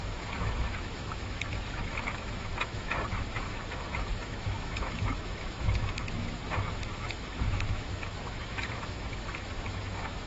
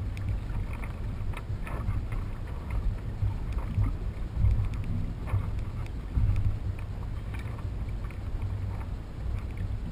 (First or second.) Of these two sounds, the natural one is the second